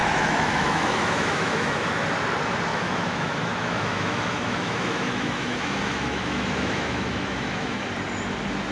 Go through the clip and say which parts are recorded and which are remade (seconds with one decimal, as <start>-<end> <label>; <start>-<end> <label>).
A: 0.0-1.9 remade; 1.9-2.7 recorded; 2.7-7.8 remade; 7.8-8.7 recorded